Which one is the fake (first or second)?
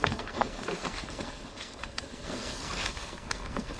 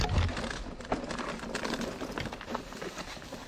first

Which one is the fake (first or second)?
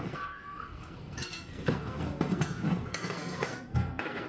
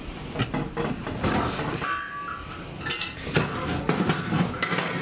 first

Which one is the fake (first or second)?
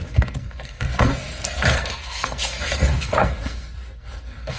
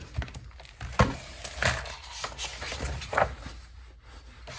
first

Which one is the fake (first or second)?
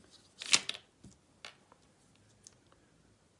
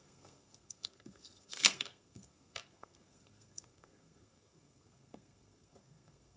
second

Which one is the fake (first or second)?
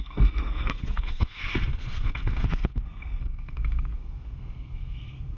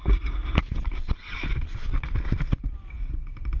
first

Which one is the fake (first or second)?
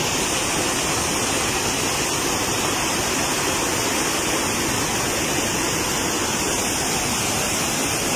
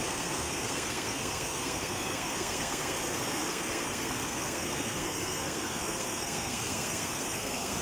second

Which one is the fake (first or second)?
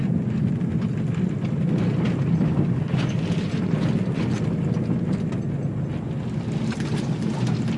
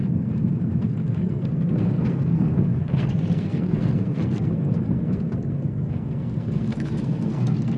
second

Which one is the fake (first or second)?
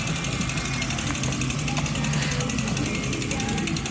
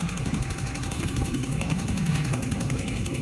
second